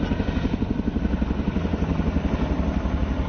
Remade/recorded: recorded